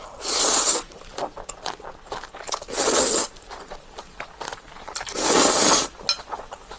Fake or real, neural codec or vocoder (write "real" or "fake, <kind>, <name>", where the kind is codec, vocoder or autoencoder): real